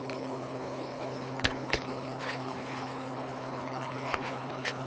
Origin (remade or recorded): remade